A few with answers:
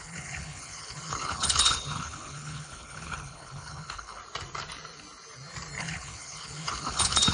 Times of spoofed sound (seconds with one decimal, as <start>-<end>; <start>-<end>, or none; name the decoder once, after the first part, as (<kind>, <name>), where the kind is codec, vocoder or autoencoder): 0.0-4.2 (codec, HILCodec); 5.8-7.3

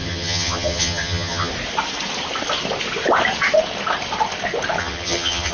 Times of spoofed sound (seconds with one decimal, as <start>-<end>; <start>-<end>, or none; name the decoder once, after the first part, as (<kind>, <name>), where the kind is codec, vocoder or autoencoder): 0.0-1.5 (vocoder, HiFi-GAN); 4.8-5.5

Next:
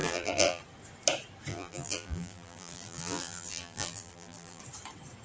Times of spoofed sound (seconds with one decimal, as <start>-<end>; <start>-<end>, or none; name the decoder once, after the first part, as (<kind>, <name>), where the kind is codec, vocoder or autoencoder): 0.0-0.6 (vocoder, BigVGAN v2); 1.5-4.6

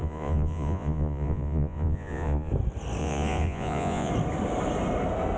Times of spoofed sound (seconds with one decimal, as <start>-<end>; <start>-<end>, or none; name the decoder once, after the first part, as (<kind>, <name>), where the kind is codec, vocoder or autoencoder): 0.0-2.5 (vocoder, Vocos); 3.0-4.1